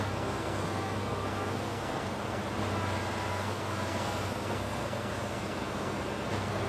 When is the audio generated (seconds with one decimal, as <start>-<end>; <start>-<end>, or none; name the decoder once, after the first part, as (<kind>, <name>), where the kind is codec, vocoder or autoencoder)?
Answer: 0.0-2.4 (codec, SNAC); 3.3-6.7